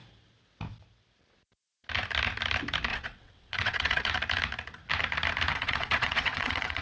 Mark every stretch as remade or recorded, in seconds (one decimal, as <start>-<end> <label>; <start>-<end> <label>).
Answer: 0.0-2.9 recorded; 2.9-4.1 remade; 4.1-5.5 recorded; 5.5-6.8 remade